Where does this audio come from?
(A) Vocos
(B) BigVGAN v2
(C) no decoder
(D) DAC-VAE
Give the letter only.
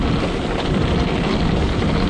C